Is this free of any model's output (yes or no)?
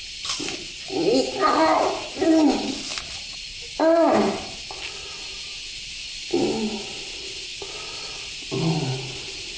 yes